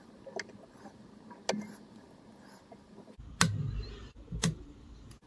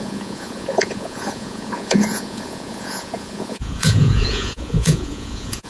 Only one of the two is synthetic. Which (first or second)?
second